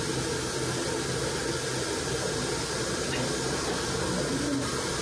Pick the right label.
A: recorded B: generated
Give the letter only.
A